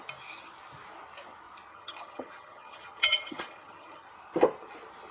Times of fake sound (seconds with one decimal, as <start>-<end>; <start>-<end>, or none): 1.7-4.1